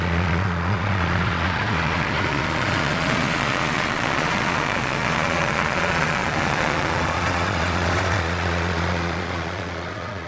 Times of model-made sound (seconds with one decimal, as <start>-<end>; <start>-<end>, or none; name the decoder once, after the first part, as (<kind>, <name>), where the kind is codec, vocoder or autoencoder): 0.0-10.3 (vocoder, Vocos)